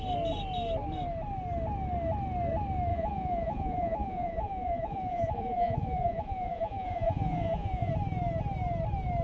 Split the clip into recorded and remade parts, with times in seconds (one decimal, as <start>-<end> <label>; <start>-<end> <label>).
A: 0.0-2.9 recorded; 2.9-7.9 remade; 7.9-9.2 recorded